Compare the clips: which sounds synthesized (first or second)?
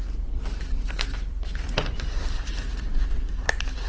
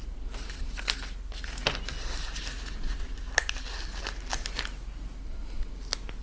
first